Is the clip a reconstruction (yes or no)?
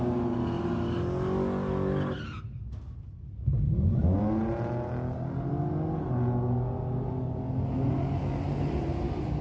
no